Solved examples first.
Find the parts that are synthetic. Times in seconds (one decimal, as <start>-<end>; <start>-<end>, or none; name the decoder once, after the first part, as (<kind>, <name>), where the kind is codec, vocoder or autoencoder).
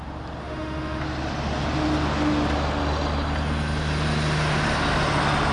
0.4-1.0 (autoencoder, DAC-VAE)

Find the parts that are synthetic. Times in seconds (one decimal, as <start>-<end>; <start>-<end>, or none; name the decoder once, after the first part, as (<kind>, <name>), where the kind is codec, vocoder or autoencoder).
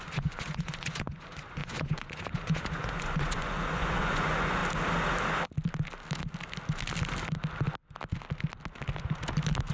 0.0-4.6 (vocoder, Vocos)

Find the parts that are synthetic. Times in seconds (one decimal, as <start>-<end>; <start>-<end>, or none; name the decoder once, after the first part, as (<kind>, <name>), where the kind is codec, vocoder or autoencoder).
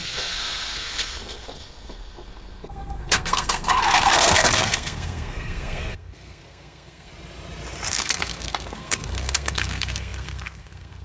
0.0-7.1 (codec, SNAC); 7.9-11.0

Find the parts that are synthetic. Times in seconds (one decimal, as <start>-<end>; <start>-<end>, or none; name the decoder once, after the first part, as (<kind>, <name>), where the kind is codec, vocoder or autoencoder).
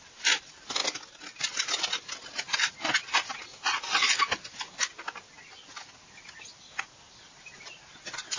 none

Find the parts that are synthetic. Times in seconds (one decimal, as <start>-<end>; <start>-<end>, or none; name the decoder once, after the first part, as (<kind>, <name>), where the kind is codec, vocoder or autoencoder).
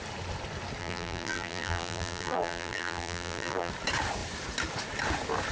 0.8-3.7 (vocoder, BigVGAN v2)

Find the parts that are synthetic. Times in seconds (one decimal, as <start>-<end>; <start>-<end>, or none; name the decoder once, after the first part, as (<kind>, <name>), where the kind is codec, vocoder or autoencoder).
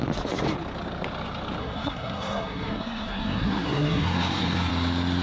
1.6-4.7 (codec, SNAC)